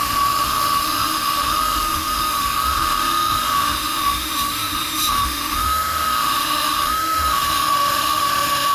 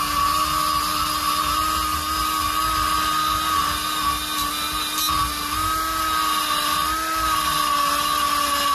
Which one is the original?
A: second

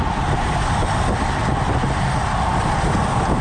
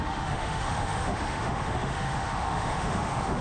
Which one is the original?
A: first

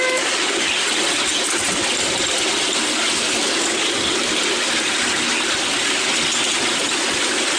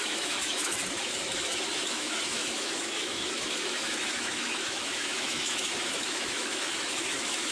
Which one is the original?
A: first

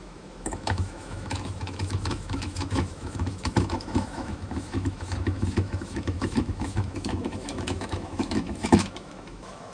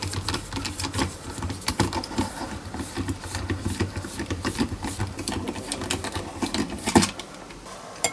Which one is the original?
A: second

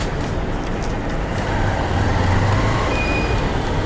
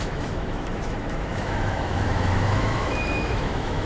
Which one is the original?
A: first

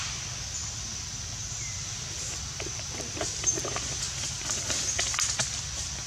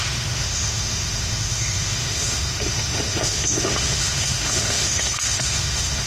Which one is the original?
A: first